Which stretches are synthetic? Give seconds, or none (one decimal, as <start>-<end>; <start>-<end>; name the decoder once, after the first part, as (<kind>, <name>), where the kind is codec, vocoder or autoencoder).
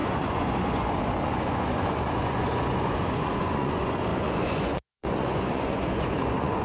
0.0-6.6 (vocoder, Vocos)